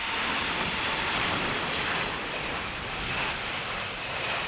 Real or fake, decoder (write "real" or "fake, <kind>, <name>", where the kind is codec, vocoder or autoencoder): fake, vocoder, BigVGAN v2